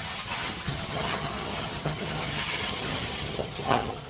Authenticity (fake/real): fake